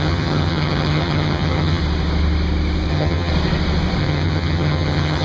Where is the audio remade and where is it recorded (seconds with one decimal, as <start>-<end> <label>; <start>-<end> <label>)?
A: 0.0-1.8 remade; 1.8-2.9 recorded; 2.9-3.3 remade; 3.3-4.0 recorded; 4.0-5.2 remade